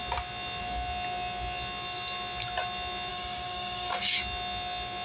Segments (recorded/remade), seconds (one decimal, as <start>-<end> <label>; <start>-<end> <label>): 0.0-3.1 recorded; 3.1-4.0 remade; 4.0-5.0 recorded